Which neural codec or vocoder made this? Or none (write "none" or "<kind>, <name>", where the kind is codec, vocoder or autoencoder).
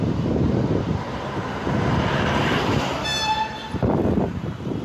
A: vocoder, BigVGAN v2